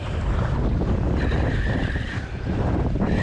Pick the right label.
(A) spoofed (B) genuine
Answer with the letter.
A